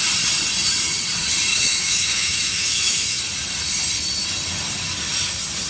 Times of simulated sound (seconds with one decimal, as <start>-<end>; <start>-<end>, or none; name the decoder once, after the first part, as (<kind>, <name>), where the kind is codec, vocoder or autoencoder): 1.5-3.2 (autoencoder, DAC-VAE)